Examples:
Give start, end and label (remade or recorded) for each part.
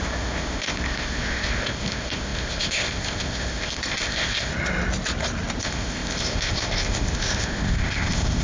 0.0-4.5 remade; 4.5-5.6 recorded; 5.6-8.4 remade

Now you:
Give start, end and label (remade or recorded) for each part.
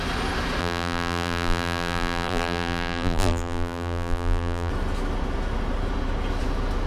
0.0-0.6 recorded; 0.6-4.7 remade; 4.7-6.9 recorded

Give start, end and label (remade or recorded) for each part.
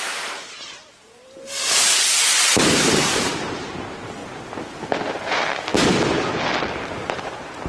0.0-4.2 remade; 4.2-5.3 recorded; 5.3-5.7 remade; 5.7-6.7 recorded; 6.7-7.7 remade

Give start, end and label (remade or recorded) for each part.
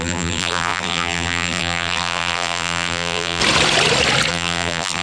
0.0-3.4 remade; 3.4-4.3 recorded; 4.3-5.0 remade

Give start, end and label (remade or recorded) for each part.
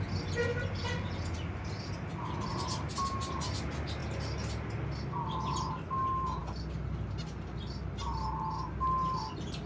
0.0-9.7 recorded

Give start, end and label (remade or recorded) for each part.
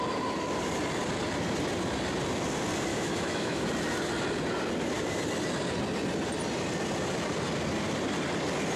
0.0-2.9 recorded; 2.9-3.7 remade; 3.7-8.8 recorded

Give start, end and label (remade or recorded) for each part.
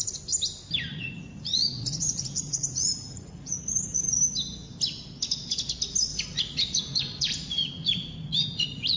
0.0-0.9 recorded; 0.9-4.2 remade; 4.2-6.1 recorded; 6.1-9.0 remade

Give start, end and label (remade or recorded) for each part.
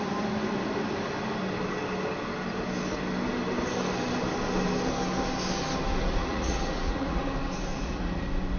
0.0-6.2 recorded; 6.2-7.2 remade; 7.2-7.7 recorded; 7.7-8.2 remade; 8.2-8.6 recorded